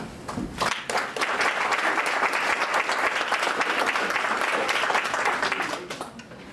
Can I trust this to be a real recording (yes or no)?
yes